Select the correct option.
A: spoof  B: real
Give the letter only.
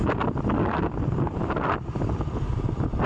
B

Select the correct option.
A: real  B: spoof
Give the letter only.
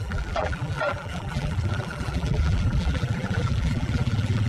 B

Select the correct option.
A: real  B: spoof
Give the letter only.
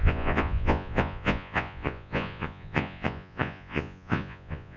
B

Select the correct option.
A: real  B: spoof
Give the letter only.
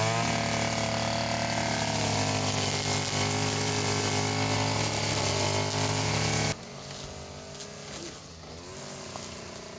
A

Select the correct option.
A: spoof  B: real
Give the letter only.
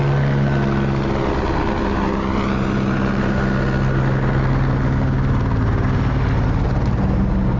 B